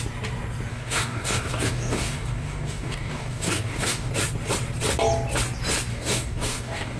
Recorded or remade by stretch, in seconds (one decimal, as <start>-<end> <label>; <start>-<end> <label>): 0.0-0.7 recorded; 0.7-4.1 remade; 4.1-5.9 recorded; 5.9-7.0 remade